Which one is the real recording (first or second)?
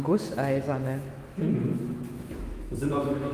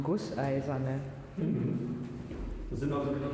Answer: second